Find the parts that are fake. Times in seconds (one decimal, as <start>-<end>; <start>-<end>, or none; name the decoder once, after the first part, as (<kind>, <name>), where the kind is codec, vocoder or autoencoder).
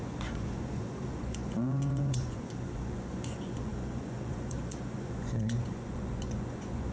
0.0-6.9 (vocoder, Vocos)